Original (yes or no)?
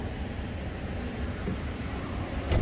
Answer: yes